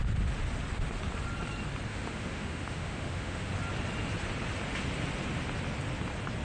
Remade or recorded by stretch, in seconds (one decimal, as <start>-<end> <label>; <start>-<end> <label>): 0.0-1.9 recorded; 1.9-3.5 remade; 3.5-6.4 recorded